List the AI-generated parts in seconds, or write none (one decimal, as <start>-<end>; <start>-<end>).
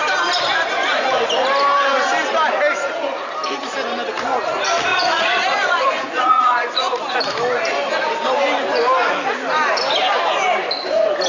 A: 4.9-7.0